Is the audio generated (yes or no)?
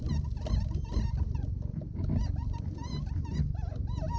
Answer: no